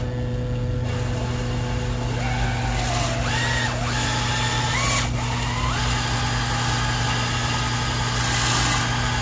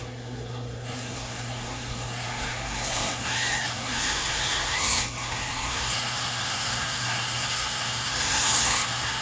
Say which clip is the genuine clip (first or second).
first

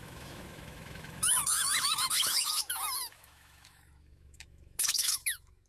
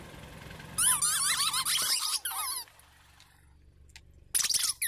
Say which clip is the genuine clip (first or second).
second